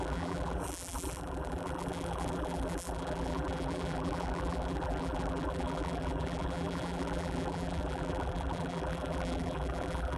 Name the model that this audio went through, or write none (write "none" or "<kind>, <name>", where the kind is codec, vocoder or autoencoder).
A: vocoder, BigVGAN v2